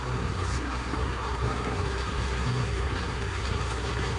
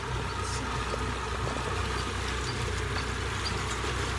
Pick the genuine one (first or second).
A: second